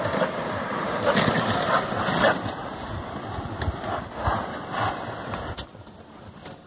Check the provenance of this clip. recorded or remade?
recorded